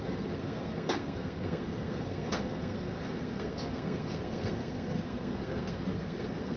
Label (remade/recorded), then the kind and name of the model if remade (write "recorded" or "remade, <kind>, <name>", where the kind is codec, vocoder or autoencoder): remade, codec, SNAC